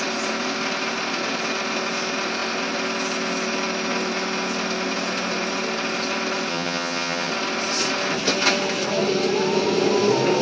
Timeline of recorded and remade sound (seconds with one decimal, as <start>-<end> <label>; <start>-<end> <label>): 0.0-6.5 recorded; 6.5-7.3 remade; 7.3-10.4 recorded